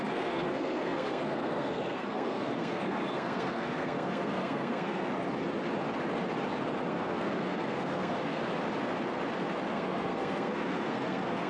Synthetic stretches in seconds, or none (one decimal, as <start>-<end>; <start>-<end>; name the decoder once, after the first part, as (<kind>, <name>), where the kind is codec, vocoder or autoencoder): 0.0-5.0 (codec, SNAC); 6.9-8.4; 9.7-11.5